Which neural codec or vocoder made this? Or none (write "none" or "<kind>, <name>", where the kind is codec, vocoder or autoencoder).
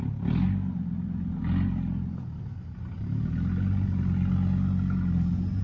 none